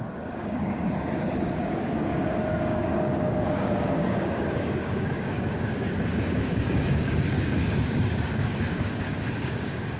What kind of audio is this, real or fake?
fake